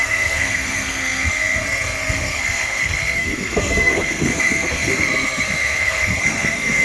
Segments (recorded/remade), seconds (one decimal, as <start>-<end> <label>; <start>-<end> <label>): 0.0-6.8 remade